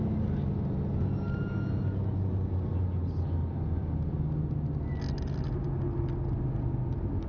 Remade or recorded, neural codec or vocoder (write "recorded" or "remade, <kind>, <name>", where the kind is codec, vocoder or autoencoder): recorded